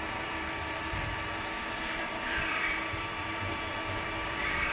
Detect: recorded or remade remade